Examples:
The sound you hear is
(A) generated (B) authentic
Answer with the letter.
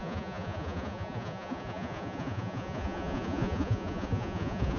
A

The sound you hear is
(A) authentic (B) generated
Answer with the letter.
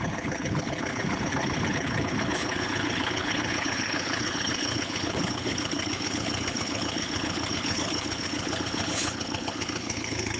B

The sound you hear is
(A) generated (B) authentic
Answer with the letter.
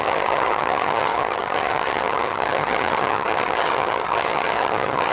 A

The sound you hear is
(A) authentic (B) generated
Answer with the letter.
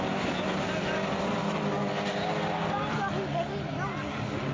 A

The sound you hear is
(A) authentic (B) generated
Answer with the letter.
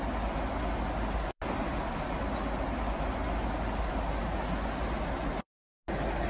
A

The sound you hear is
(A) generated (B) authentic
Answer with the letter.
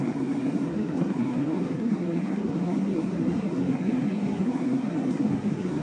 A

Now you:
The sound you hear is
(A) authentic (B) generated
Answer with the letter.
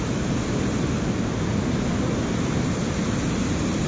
A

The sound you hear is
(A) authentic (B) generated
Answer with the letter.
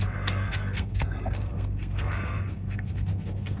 B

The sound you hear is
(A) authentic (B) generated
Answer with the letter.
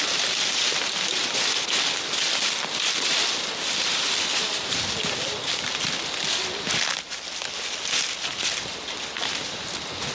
A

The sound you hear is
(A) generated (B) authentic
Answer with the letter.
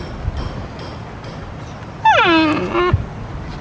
B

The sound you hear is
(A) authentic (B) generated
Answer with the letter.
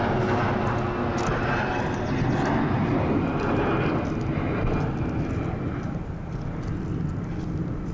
A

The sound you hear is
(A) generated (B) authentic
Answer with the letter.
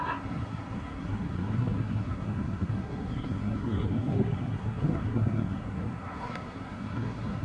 A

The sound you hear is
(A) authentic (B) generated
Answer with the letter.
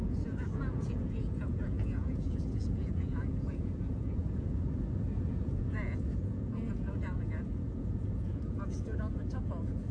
B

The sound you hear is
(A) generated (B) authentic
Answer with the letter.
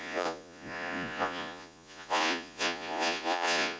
A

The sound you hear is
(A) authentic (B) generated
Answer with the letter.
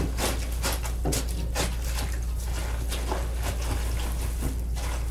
A